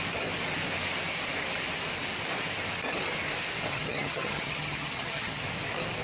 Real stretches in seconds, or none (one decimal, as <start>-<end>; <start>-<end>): 0.0-3.7; 5.4-6.0